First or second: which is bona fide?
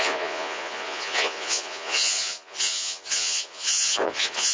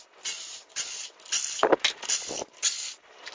second